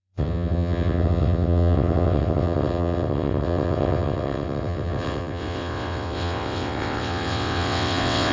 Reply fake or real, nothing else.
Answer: fake